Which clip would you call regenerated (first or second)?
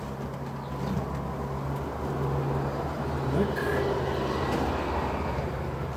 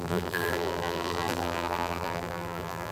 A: second